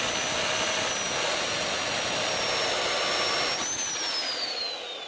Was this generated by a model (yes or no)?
no